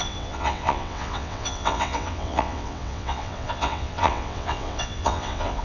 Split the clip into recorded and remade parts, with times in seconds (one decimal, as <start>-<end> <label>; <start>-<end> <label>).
0.0-5.6 remade